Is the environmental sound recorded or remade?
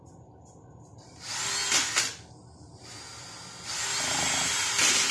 recorded